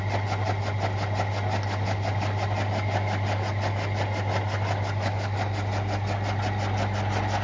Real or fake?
real